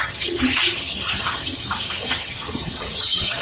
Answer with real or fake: fake